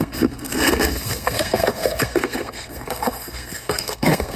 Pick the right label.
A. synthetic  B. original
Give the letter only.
A